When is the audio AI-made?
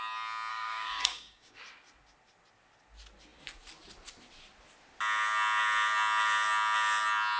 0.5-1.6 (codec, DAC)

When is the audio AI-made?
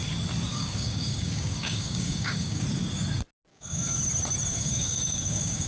0.5-2.6 (codec, DAC); 3.5-4.0; 4.5-5.7